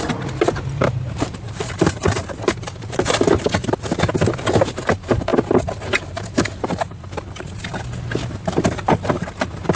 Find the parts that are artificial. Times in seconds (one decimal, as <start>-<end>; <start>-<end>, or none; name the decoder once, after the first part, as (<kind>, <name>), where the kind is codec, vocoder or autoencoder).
0.0-3.6 (vocoder, BigVGAN v2); 4.6-9.8